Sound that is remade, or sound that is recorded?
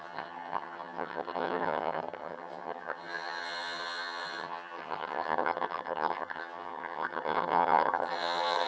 remade